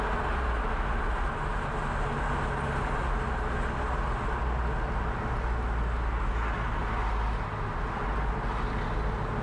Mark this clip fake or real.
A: real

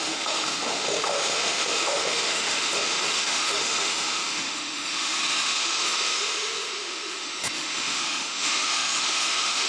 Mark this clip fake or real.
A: fake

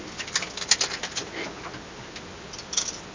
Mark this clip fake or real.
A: real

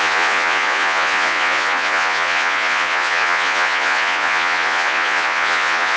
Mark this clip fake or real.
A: fake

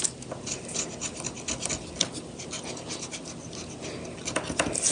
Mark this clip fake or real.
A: real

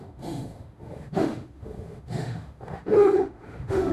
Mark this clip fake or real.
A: fake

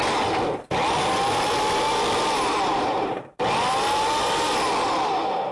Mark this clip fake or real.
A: real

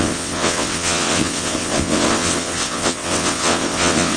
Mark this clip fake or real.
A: fake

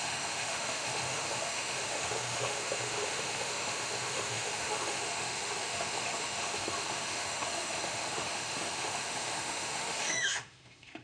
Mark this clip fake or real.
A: fake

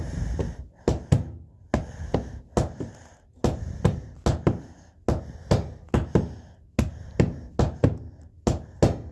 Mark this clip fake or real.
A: real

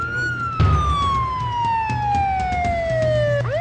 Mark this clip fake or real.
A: real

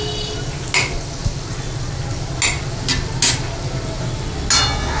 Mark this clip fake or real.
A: real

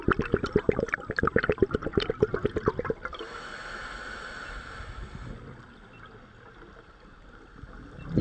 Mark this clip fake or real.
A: real